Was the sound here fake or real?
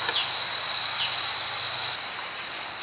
real